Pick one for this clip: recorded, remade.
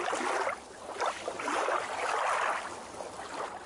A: recorded